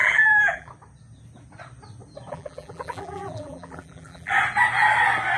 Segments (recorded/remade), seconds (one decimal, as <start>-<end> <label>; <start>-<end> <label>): 0.0-0.7 remade; 0.7-2.3 recorded; 2.3-4.3 remade; 4.3-5.4 recorded